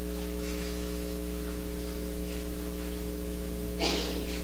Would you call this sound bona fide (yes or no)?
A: no